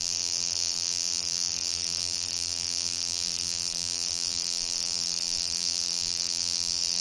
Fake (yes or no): yes